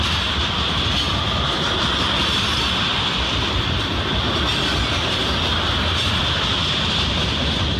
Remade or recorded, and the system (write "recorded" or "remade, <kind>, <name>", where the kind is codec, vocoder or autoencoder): recorded